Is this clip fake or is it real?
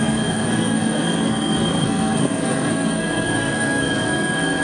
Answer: fake